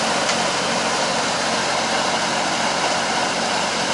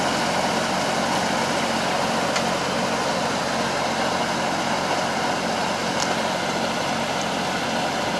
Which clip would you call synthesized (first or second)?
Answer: first